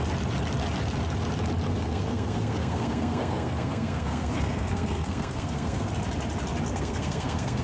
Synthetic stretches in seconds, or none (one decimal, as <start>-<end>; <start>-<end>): 1.7-5.9; 6.7-7.6

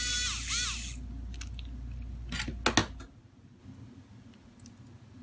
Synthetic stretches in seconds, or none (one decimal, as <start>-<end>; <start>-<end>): none

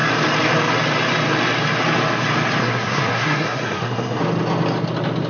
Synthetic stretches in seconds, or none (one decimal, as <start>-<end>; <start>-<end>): 2.6-4.2

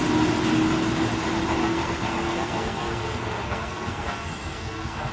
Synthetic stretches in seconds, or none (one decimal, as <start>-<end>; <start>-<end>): 1.6-5.1

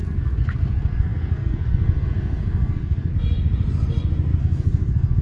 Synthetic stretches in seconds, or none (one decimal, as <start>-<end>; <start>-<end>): 0.0-3.1; 4.4-5.2

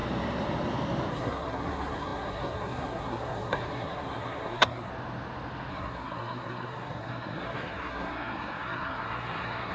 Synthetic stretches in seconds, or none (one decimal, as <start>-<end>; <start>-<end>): 1.1-4.9; 5.7-9.7